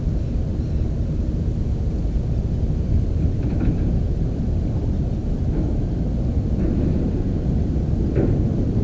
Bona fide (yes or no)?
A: yes